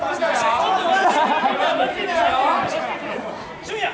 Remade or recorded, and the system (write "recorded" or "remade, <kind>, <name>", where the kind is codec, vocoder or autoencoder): recorded